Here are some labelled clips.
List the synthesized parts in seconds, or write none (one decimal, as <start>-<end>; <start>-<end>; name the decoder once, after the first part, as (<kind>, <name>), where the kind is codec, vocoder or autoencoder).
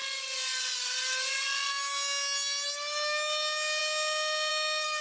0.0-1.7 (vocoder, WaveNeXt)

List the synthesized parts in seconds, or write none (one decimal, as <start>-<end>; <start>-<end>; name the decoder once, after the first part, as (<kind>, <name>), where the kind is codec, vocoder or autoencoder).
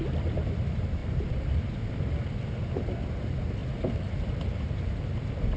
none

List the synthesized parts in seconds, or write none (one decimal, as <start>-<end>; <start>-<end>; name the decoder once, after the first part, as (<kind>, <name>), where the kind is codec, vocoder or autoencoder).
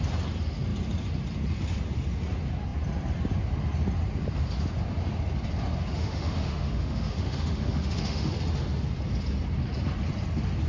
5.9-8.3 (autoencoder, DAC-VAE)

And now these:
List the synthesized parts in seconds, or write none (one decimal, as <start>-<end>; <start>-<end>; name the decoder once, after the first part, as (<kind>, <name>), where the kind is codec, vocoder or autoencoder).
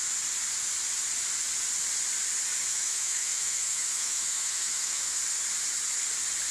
2.7-5.2 (autoencoder, DAC-VAE)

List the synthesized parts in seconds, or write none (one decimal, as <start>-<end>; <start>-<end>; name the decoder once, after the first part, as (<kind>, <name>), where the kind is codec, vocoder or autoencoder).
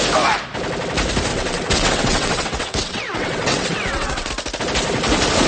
1.3-4.3 (vocoder, WaveNeXt)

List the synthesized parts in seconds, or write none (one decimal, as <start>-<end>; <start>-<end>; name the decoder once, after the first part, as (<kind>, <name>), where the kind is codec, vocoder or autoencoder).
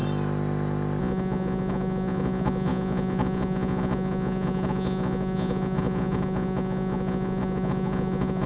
1.0-8.5 (vocoder, Vocos)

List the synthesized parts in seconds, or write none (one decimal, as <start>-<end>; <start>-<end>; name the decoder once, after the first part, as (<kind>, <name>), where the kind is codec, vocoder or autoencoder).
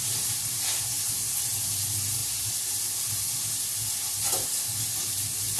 none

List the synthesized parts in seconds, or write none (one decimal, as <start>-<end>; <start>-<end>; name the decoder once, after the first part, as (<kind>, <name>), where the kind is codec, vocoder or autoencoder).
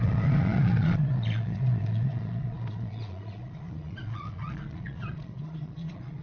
0.0-6.2 (vocoder, Vocos)